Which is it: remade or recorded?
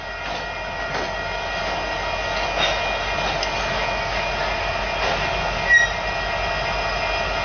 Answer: recorded